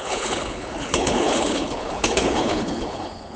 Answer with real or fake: fake